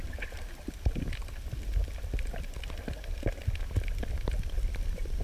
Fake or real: real